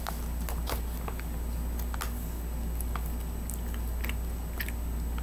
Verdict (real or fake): real